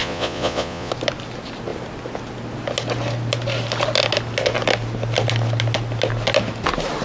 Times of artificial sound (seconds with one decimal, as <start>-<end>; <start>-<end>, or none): 0.0-0.9